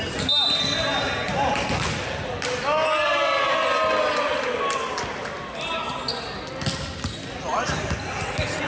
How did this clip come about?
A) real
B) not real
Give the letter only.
A